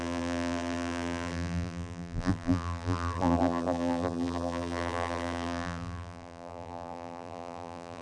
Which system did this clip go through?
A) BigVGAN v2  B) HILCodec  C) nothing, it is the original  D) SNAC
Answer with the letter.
A